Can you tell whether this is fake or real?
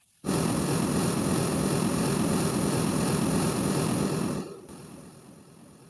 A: fake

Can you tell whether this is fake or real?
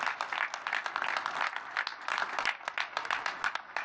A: real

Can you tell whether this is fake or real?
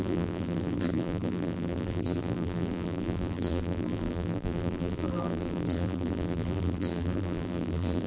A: fake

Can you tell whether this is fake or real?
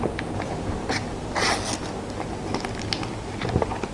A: real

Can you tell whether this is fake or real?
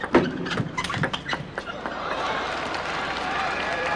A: fake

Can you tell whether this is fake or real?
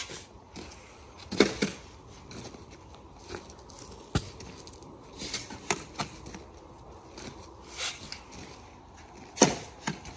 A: real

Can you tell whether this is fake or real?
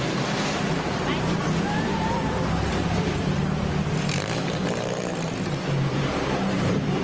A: fake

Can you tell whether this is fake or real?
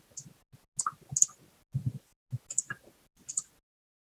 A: real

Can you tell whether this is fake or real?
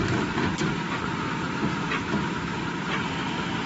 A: real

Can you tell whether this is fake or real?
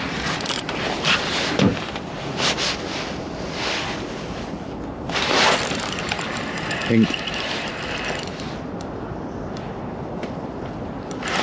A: fake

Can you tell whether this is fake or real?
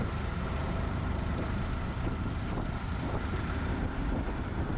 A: fake